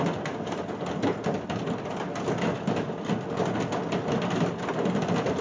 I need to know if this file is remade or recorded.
recorded